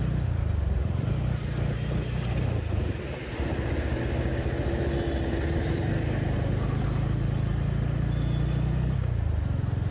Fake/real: real